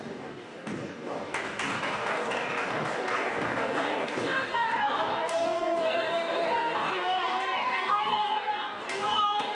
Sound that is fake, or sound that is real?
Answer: fake